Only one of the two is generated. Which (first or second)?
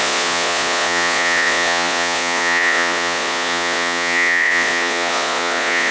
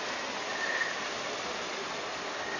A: first